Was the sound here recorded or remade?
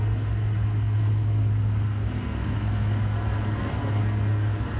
remade